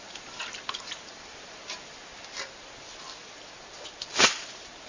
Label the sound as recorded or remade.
recorded